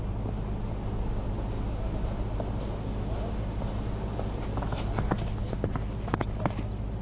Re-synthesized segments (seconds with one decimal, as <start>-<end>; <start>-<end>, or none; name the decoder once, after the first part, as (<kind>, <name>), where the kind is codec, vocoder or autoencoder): none